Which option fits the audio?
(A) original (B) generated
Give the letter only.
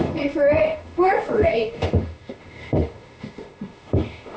B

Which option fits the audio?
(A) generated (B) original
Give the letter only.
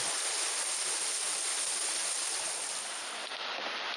B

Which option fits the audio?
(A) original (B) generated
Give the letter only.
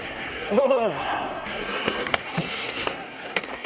B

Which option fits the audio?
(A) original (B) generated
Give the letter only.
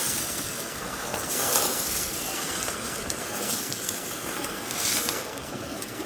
B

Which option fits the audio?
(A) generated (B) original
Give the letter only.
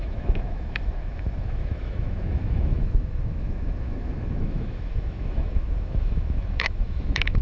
A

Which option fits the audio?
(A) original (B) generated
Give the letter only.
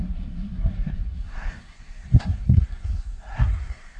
B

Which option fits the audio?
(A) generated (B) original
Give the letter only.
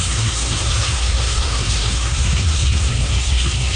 A